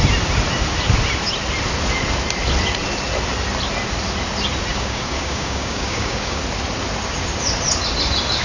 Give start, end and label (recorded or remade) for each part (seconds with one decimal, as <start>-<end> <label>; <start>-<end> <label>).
0.0-4.7 recorded; 4.7-6.4 remade; 6.4-8.4 recorded